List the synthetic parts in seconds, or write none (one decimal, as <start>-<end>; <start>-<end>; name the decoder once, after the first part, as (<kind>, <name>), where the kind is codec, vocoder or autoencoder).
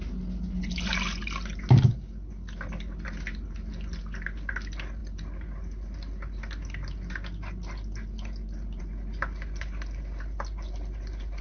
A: none